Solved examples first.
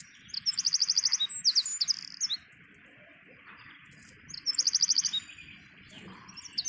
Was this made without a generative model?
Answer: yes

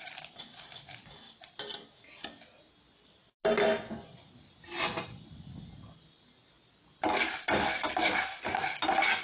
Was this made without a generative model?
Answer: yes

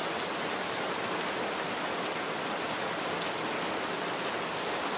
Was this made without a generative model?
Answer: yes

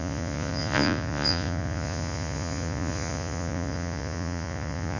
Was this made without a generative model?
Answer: no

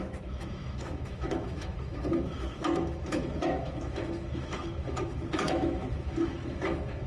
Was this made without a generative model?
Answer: no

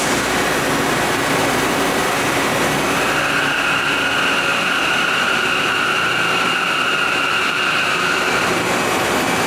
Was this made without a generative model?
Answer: yes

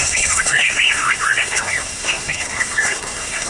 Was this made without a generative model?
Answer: no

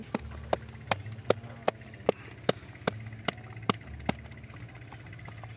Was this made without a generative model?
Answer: yes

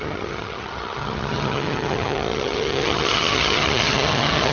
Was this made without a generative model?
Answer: no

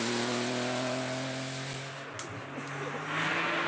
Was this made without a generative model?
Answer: yes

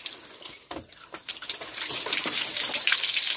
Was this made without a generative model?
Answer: yes